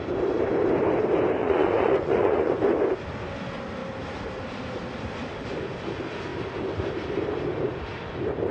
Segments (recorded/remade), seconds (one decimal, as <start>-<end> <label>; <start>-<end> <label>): 0.0-1.4 recorded; 1.4-2.6 remade; 2.6-8.5 recorded